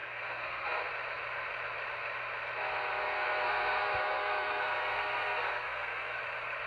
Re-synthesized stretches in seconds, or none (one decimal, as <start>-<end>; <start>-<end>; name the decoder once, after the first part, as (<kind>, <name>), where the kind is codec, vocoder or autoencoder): 0.0-0.9 (codec, SNAC); 3.0-6.2